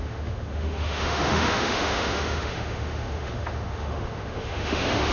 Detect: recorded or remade remade